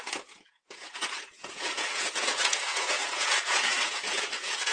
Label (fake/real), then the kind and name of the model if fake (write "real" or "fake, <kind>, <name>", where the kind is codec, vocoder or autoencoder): fake, vocoder, Vocos